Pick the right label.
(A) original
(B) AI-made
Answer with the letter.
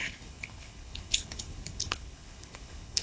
B